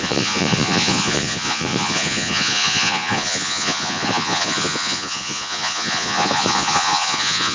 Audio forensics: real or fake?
fake